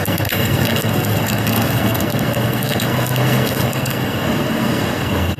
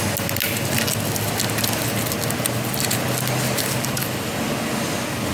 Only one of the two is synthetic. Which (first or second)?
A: first